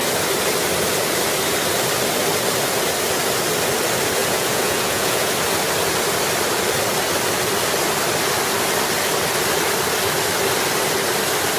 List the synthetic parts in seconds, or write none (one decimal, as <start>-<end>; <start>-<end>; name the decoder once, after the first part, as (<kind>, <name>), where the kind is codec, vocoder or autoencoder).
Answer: 4.2-5.3 (vocoder, Vocos)